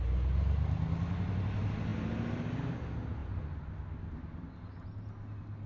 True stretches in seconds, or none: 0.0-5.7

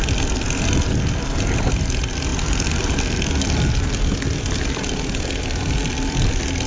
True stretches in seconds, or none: 0.0-6.7

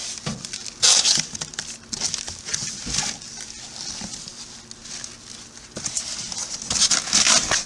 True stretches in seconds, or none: 0.0-7.7

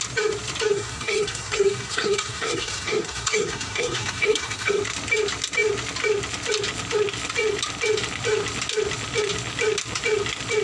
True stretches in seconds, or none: 0.0-0.7; 4.8-10.6

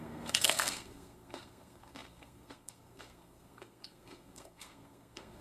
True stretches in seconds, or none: none